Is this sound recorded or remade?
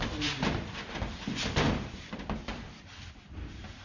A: recorded